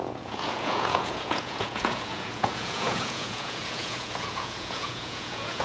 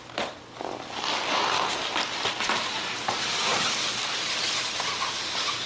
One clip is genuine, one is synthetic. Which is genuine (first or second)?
second